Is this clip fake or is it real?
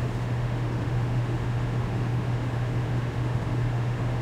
fake